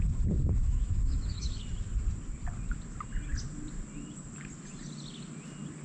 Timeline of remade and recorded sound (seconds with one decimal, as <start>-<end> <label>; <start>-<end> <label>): 0.0-0.6 recorded; 0.6-1.6 remade; 1.6-5.8 recorded